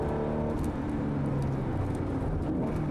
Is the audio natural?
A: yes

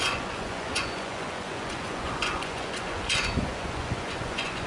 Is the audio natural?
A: no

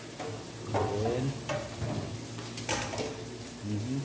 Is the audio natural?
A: yes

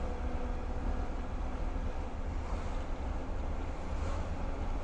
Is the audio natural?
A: yes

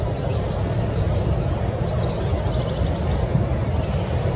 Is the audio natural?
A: yes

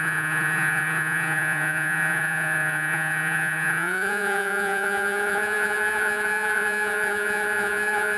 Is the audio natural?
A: no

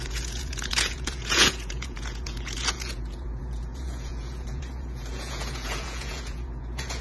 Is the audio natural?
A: no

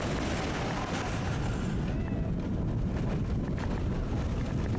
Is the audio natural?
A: yes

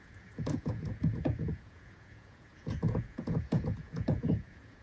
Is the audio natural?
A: no